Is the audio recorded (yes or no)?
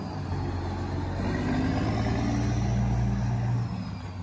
yes